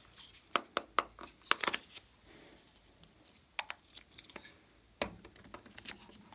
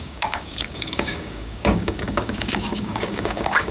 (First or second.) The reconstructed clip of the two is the second